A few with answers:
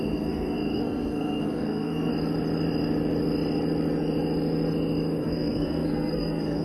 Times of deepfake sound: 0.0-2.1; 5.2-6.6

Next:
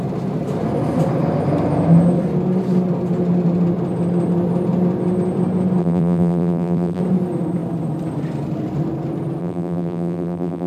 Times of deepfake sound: 5.8-7.0; 9.4-10.7

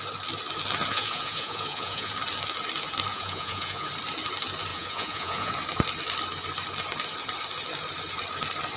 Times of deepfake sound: 0.9-2.1; 3.1-3.9; 4.7-5.5